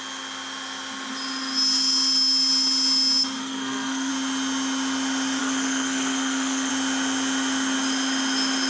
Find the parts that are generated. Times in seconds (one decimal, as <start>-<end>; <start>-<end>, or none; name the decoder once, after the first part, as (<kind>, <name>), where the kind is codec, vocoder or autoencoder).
3.4-4.1 (codec, SNAC); 5.4-6.7